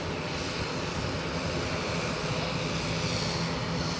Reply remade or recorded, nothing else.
recorded